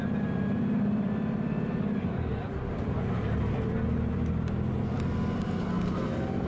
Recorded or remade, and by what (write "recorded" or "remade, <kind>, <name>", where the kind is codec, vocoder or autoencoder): remade, vocoder, BigVGAN v2